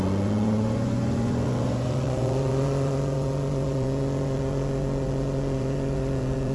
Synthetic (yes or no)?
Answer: yes